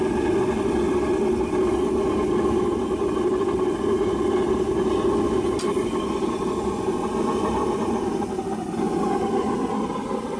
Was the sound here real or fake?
real